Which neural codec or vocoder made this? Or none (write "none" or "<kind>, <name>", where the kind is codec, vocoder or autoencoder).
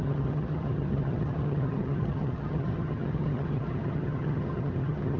vocoder, HiFi-GAN